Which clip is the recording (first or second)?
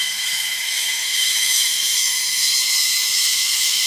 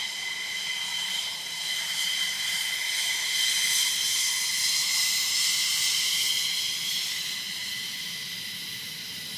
second